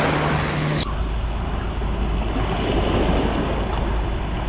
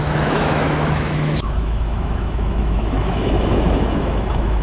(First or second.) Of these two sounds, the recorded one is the first